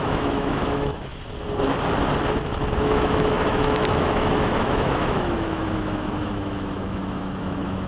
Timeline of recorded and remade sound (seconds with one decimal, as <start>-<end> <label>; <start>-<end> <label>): 0.0-1.1 remade; 1.1-2.8 recorded; 2.8-7.9 remade

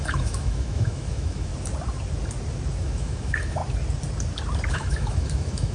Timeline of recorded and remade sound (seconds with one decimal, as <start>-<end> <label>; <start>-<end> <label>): 0.0-1.5 remade; 1.5-2.8 recorded; 2.8-3.6 remade; 3.6-4.7 recorded; 4.7-5.7 remade

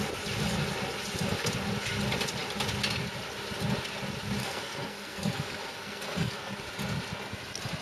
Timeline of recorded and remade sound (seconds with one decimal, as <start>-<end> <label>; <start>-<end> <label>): 0.0-4.4 recorded; 4.4-6.6 remade; 6.6-7.8 recorded

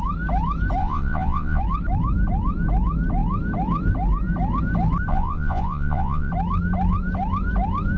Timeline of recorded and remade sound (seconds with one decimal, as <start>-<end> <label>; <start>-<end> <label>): 0.0-0.8 recorded; 0.8-1.6 remade; 1.6-5.1 recorded; 5.1-6.3 remade; 6.3-8.0 recorded